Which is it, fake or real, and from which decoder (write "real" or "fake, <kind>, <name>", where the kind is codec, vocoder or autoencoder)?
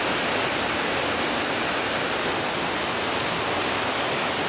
real